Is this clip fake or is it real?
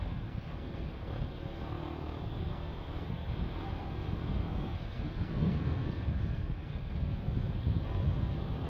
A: fake